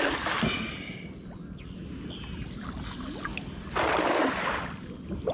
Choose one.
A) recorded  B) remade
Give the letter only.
A